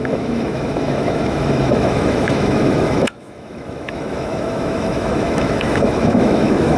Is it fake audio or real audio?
fake